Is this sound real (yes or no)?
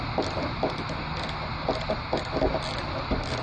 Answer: yes